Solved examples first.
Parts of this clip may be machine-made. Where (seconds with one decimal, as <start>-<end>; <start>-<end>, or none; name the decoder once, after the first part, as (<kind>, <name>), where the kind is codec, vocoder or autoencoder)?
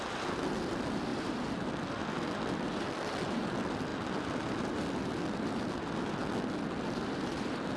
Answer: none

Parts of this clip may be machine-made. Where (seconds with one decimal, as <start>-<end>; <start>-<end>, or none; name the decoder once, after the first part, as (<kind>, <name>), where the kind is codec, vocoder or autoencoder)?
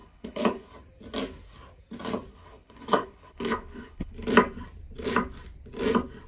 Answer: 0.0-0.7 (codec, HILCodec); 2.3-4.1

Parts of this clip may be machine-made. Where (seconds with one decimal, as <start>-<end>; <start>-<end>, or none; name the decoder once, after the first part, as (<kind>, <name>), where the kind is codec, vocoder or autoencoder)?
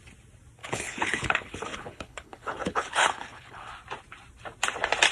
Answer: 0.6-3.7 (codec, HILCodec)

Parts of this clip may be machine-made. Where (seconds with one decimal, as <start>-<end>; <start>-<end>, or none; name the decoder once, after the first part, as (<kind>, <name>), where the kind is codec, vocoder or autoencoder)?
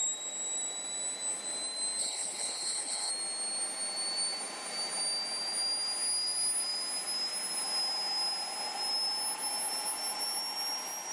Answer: 2.0-3.1 (codec, HILCodec)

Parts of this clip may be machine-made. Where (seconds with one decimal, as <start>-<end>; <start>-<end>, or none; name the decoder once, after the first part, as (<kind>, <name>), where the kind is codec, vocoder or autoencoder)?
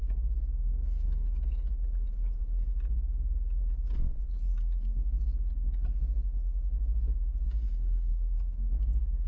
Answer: 7.6-8.1 (codec, HILCodec)